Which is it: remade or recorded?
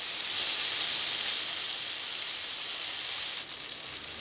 recorded